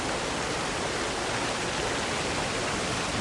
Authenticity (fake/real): real